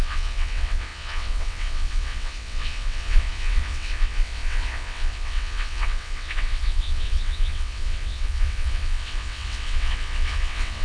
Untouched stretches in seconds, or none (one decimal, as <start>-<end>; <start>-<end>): none